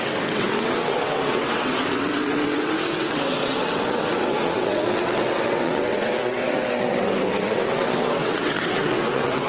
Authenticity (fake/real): fake